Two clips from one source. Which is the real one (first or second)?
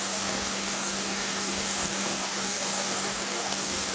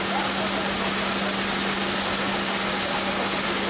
second